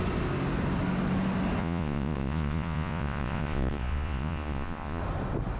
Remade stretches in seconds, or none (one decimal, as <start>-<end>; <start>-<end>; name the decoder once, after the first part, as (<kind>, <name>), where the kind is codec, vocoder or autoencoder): 1.6-5.0 (vocoder, Vocos)